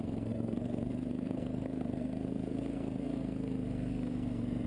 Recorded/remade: remade